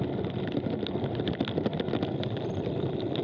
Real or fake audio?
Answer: real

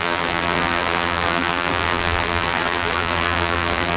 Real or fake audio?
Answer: fake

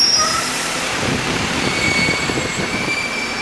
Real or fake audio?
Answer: fake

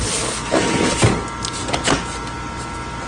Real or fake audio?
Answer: real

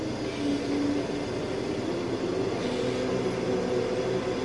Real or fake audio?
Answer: real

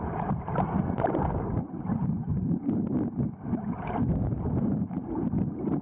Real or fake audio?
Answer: fake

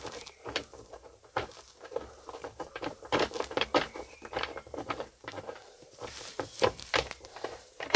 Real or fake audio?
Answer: fake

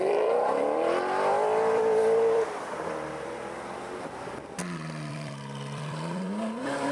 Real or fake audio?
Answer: fake